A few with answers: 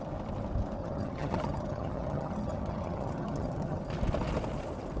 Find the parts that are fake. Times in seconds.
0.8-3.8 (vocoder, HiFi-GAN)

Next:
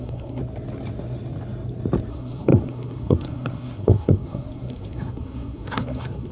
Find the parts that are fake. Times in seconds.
0.0-0.4 (codec, SNAC); 2.1-6.3

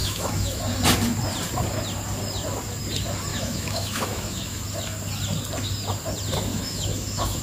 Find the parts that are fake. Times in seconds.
0.0-0.6 (autoencoder, DAC-VAE); 3.3-4.6; 6.5-7.4

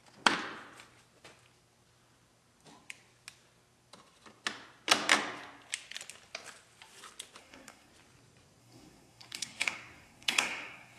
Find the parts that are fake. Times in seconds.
7.4-7.9 (codec, SNAC); 8.6-11.0

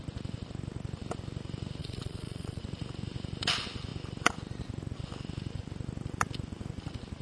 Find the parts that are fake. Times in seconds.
1.8-2.6 (vocoder, Vocos)